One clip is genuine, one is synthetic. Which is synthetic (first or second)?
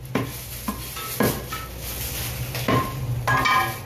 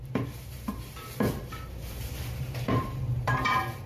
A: second